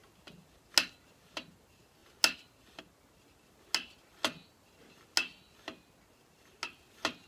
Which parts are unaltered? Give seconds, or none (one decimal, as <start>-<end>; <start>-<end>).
0.0-7.3